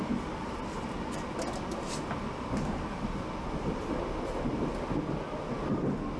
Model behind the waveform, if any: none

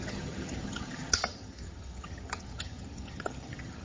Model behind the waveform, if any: vocoder, HiFi-GAN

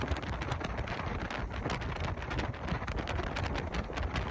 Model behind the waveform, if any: none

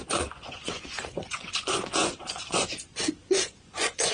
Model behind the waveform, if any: vocoder, Vocos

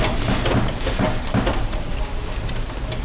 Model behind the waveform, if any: none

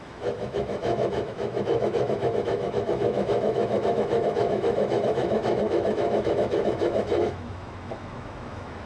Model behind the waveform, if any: autoencoder, DAC-VAE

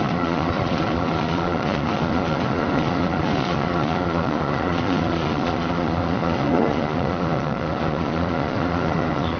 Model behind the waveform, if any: vocoder, Vocos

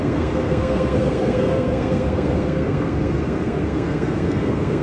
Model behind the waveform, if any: codec, SNAC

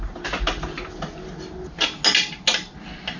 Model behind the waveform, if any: none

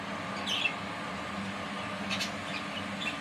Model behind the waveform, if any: none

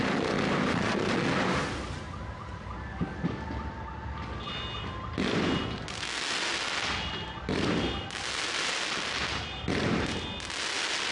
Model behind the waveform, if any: none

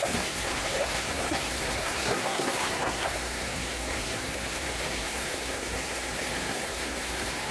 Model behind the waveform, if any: codec, SNAC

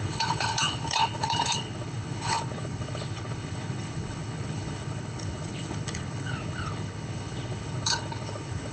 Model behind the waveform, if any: codec, HILCodec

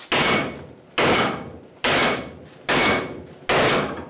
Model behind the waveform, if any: none